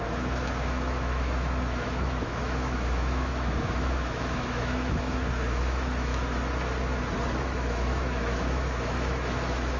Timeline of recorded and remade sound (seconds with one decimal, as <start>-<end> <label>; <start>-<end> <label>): 0.0-6.1 remade; 6.1-7.4 recorded; 7.4-9.8 remade

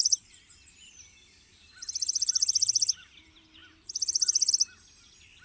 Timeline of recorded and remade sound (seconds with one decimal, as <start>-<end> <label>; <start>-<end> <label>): 0.0-3.2 remade; 3.2-3.6 recorded; 3.6-4.5 remade; 4.5-5.4 recorded

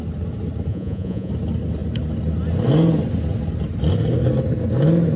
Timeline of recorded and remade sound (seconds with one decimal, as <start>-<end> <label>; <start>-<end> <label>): 0.0-0.7 recorded; 0.7-1.3 remade; 1.3-5.2 recorded

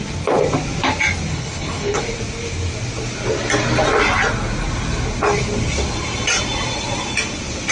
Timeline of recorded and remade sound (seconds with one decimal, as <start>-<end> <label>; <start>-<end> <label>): 0.0-1.3 recorded; 1.3-2.0 remade; 2.0-7.7 recorded

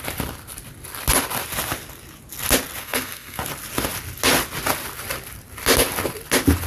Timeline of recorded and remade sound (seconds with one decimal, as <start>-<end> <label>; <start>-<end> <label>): 0.0-2.8 recorded; 2.8-3.4 remade; 3.4-6.7 recorded

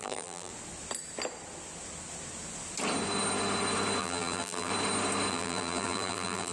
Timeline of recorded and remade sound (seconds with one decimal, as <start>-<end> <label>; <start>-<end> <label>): 0.0-0.5 remade; 0.5-4.0 recorded; 4.0-4.7 remade; 4.7-5.3 recorded; 5.3-6.5 remade

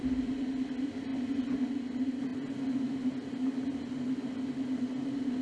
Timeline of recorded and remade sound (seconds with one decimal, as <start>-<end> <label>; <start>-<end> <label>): 0.0-0.6 remade; 0.6-5.4 recorded

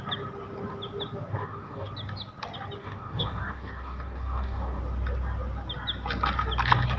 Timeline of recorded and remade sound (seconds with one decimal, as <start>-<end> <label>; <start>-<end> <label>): 0.0-1.3 recorded; 1.3-1.9 remade; 1.9-2.8 recorded; 2.8-4.8 remade; 4.8-7.0 recorded